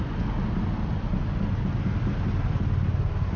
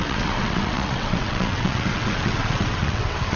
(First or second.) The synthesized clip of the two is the second